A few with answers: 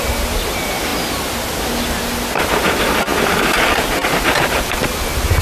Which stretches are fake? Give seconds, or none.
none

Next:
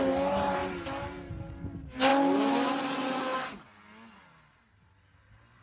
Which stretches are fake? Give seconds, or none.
none

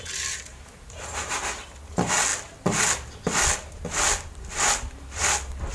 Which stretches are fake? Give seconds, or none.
0.5-1.3 (vocoder, BigVGAN v2)